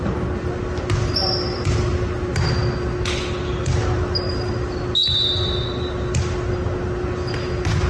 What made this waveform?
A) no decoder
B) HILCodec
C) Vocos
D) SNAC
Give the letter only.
A